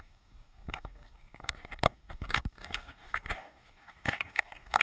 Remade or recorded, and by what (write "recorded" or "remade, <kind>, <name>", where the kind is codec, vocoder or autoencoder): remade, codec, DAC